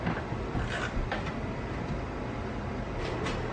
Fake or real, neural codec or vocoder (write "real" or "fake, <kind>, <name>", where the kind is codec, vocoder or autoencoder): real